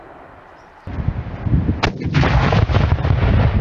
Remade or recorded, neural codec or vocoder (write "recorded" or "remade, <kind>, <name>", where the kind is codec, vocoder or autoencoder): recorded